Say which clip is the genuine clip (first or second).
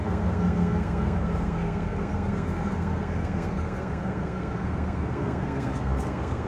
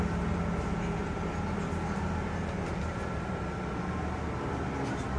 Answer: second